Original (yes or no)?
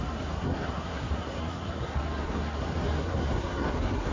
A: no